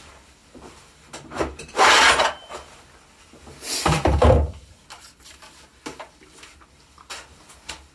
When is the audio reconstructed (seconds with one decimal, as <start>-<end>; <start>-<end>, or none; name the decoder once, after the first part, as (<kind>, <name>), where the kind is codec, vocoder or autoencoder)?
none